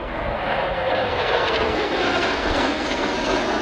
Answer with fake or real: fake